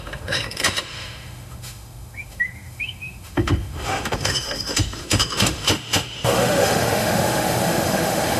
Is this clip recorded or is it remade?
remade